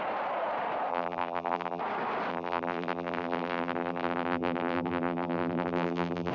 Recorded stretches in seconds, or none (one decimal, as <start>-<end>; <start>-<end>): 0.0-0.9; 1.8-2.3